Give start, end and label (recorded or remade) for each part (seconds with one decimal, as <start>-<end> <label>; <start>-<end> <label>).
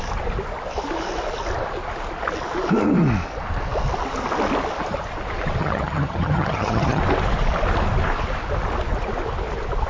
0.0-5.6 recorded; 5.6-7.0 remade; 7.0-9.9 recorded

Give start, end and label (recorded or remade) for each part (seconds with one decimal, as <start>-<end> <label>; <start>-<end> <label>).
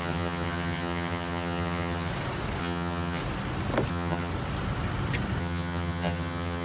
0.0-2.1 remade; 2.1-2.6 recorded; 2.6-3.2 remade; 3.2-3.9 recorded; 3.9-4.3 remade; 4.3-5.4 recorded; 5.4-6.6 remade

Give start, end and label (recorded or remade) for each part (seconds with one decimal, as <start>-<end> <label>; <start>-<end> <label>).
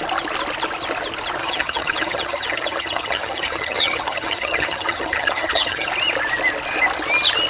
0.0-1.4 recorded; 1.4-5.9 remade; 5.9-7.5 recorded